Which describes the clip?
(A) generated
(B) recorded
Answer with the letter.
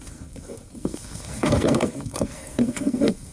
A